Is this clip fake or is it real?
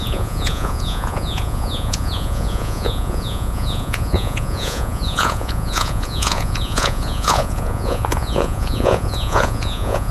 fake